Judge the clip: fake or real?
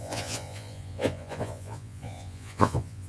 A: fake